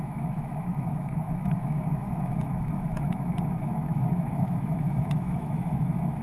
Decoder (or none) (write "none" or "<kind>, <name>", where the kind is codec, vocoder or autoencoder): autoencoder, DAC-VAE